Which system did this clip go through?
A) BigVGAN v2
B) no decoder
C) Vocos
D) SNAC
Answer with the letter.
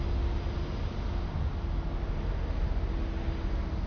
B